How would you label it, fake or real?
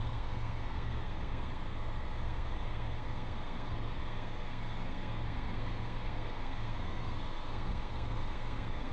fake